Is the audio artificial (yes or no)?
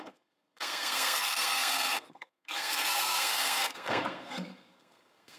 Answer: yes